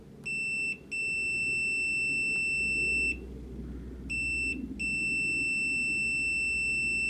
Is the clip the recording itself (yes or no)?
yes